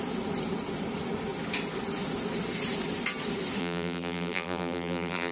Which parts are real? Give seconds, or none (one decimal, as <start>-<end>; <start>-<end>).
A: 0.0-3.6